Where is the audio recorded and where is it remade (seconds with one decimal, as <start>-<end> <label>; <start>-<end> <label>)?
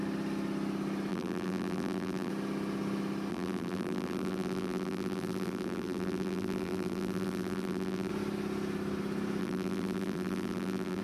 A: 0.0-1.1 recorded; 1.1-2.3 remade; 2.3-3.3 recorded; 3.3-8.1 remade; 8.1-9.4 recorded; 9.4-11.0 remade